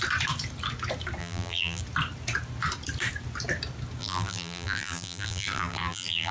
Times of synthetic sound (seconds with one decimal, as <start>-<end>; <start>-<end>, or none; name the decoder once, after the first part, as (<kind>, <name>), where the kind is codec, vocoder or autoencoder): 1.2-1.8 (vocoder, BigVGAN v2); 4.0-6.3